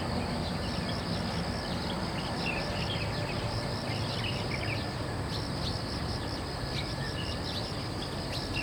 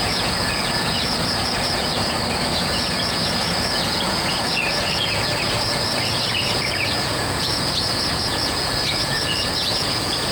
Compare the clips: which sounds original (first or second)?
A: first